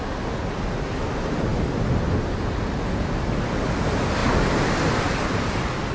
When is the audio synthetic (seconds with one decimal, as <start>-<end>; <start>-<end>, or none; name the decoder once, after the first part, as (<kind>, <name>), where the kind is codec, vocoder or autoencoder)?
none